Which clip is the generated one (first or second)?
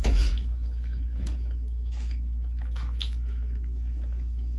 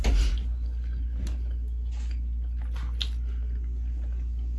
first